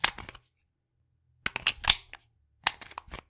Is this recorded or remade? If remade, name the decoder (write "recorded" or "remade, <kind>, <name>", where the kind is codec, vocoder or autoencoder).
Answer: recorded